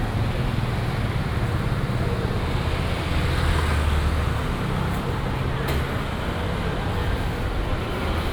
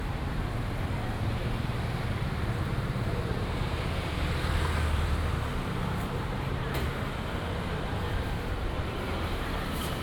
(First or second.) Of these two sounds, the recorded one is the first